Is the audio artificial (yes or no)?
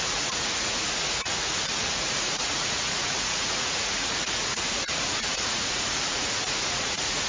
yes